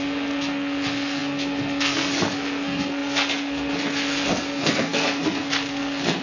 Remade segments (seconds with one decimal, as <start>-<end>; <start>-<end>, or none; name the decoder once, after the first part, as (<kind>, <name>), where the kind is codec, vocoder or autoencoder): 0.0-6.2 (codec, SNAC)